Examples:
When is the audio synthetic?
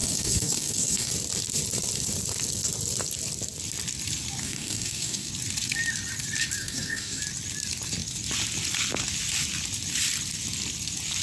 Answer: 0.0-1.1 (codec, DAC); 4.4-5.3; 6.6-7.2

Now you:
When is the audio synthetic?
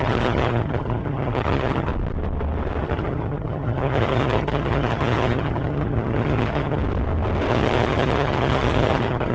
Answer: 0.0-1.9 (vocoder, HiFi-GAN); 2.8-6.8; 7.5-9.3